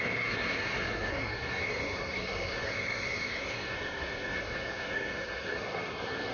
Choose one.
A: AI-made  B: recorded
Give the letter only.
A